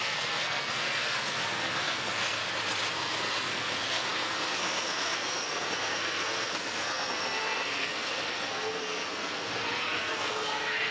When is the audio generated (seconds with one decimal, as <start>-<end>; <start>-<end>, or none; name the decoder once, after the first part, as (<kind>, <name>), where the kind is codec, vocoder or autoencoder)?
0.0-2.4 (codec, SNAC); 2.9-10.9